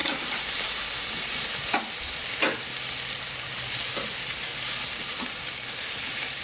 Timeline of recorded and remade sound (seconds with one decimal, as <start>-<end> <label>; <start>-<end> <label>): 0.0-2.7 remade; 2.7-3.4 recorded; 3.4-4.5 remade; 4.5-5.3 recorded; 5.3-6.4 remade